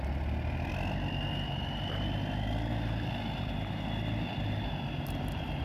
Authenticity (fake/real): real